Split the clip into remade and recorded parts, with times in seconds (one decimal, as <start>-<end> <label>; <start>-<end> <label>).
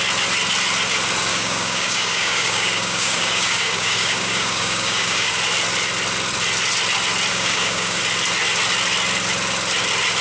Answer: 0.0-1.3 recorded; 1.3-5.3 remade; 5.3-7.3 recorded; 7.3-8.0 remade; 8.0-10.2 recorded